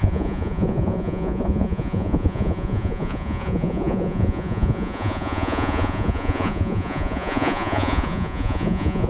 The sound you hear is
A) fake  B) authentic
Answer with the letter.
A